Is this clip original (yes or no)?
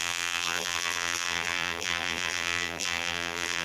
no